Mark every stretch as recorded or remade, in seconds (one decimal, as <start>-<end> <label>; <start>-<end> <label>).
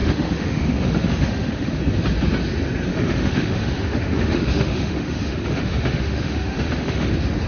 0.0-1.8 remade; 1.8-2.9 recorded; 2.9-7.1 remade; 7.1-7.5 recorded